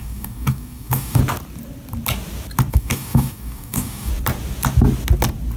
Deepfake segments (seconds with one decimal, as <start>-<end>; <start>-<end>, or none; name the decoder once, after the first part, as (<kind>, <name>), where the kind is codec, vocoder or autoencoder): 0.0-1.2 (codec, DAC); 2.7-4.1